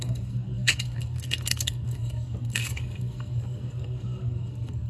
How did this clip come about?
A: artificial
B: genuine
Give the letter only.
A